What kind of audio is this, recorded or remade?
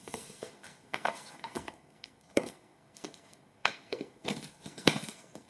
remade